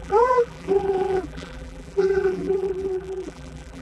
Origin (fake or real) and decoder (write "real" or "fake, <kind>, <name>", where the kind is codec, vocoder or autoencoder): fake, vocoder, BigVGAN v2